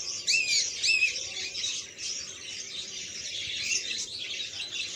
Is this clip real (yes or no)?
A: yes